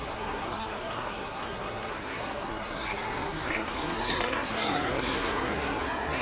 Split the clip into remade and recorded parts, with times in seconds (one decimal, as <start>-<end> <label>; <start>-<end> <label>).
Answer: 0.0-6.2 remade